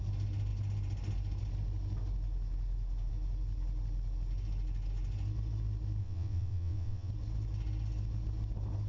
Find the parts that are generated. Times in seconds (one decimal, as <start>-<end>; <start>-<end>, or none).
6.0-7.1